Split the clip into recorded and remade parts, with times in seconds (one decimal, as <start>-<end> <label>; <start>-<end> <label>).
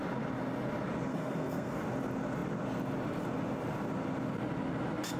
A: 0.0-1.1 recorded; 1.1-1.8 remade; 1.8-5.2 recorded